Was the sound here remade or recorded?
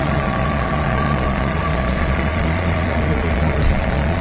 remade